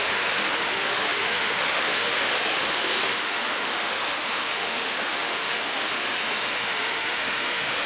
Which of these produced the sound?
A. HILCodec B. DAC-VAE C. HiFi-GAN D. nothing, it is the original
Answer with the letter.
B